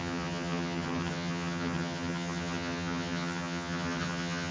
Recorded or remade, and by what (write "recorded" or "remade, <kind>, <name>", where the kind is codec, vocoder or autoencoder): remade, vocoder, HiFi-GAN